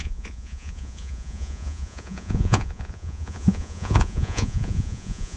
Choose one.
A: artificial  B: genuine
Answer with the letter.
A